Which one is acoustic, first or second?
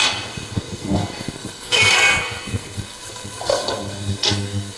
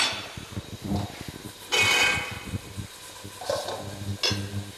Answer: second